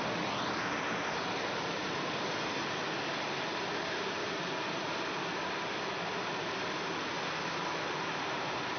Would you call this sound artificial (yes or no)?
no